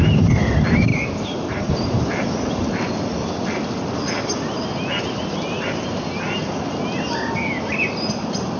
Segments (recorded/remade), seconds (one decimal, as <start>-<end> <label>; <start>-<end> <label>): 0.0-0.9 recorded; 0.9-1.7 remade; 1.7-8.6 recorded